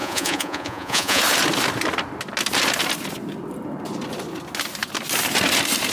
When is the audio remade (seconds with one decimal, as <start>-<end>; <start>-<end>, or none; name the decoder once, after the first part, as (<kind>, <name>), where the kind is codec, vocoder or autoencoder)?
0.0-1.2 (vocoder, Vocos)